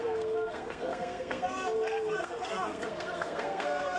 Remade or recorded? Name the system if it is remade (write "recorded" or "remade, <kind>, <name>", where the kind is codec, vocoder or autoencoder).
remade, codec, SNAC